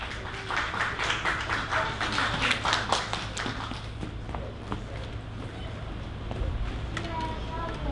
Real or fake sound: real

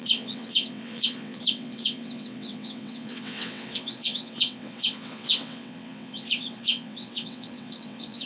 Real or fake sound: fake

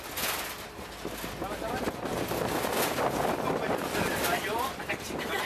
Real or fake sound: real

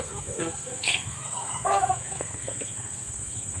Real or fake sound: fake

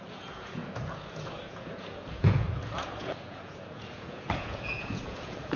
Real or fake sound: fake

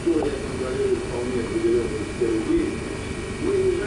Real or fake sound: real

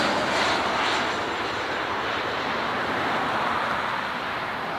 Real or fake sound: real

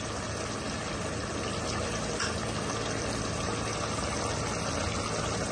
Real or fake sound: real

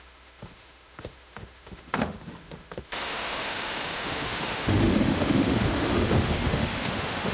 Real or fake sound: fake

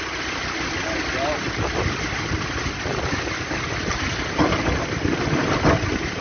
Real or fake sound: real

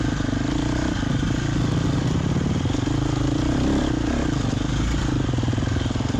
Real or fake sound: real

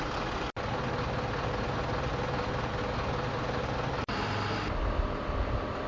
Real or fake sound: real